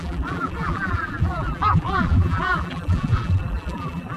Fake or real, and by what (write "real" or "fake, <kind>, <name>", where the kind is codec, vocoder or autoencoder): fake, vocoder, BigVGAN v2